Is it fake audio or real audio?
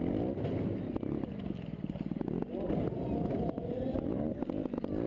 real